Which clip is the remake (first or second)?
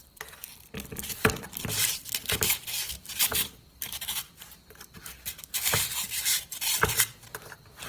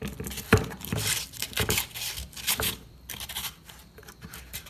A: first